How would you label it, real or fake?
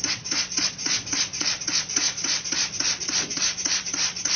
fake